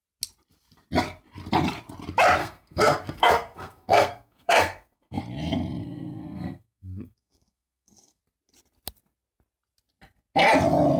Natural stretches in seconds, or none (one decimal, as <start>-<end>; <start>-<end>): 0.0-2.4; 5.2-5.8; 8.2-11.0